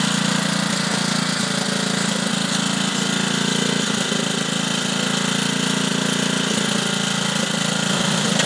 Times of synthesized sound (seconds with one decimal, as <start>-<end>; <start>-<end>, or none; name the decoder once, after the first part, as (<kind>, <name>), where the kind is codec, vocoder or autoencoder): none

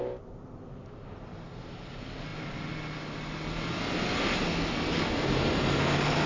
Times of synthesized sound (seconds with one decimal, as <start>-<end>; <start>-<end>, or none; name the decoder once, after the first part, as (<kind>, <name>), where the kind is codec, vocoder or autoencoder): none

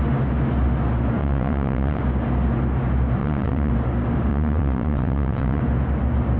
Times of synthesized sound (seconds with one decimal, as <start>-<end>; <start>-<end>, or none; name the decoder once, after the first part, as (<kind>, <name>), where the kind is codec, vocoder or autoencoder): 1.2-2.0 (vocoder, WaveNeXt); 3.2-3.7; 4.3-5.6

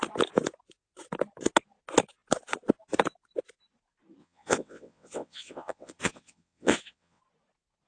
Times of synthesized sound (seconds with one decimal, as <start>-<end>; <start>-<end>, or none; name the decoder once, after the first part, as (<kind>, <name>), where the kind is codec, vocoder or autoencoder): 4.2-7.2 (vocoder, WaveNeXt)

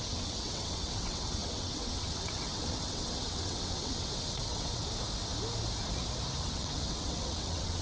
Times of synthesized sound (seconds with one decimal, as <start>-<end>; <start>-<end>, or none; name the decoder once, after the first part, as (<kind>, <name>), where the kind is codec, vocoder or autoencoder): 0.0-4.8 (vocoder, WaveNeXt); 6.5-7.8

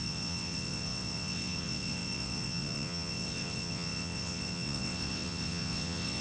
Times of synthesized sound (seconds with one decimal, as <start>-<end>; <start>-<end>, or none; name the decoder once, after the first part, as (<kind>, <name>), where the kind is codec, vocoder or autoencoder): 0.0-6.2 (vocoder, WaveNeXt)

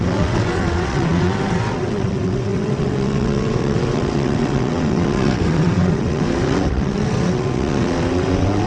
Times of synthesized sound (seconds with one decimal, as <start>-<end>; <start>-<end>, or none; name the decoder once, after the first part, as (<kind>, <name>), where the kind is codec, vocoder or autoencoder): 0.0-8.7 (vocoder, WaveNeXt)

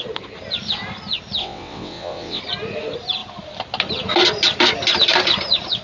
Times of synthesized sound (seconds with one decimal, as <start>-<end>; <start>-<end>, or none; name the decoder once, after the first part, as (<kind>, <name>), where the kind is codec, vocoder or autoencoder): 1.4-2.4 (vocoder, WaveNeXt)